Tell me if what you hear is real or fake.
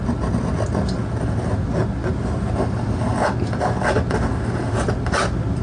real